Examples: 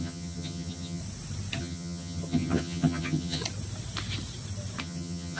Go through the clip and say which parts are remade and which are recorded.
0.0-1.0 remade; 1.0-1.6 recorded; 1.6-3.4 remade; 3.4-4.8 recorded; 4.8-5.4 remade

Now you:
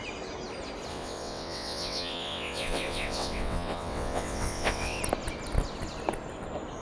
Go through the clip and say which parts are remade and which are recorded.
0.0-0.9 recorded; 0.9-5.0 remade; 5.0-6.8 recorded

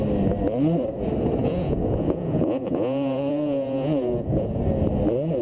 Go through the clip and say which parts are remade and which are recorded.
0.0-1.4 recorded; 1.4-4.6 remade; 4.6-5.4 recorded

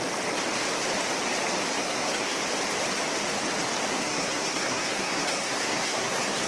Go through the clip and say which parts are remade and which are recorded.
0.0-1.8 recorded; 1.8-2.4 remade; 2.4-3.9 recorded; 3.9-6.5 remade

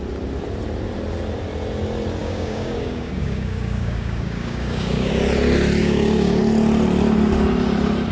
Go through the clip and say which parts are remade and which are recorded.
0.0-2.2 recorded; 2.2-5.1 remade; 5.1-5.8 recorded; 5.8-6.4 remade; 6.4-8.1 recorded

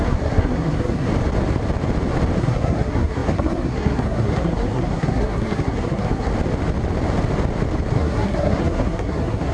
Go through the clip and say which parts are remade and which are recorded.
0.0-1.1 remade; 1.1-2.4 recorded; 2.4-6.3 remade; 6.3-7.9 recorded; 7.9-9.5 remade

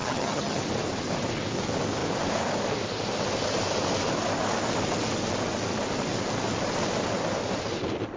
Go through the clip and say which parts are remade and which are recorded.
0.0-0.6 remade; 0.6-8.2 recorded